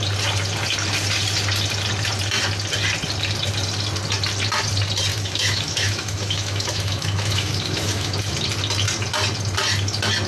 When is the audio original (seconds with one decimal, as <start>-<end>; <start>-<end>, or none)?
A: 0.0-5.1; 8.2-10.3